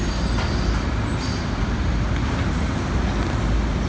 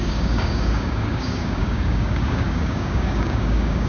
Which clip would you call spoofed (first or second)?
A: second